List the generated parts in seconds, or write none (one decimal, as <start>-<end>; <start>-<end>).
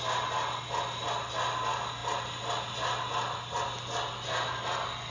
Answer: none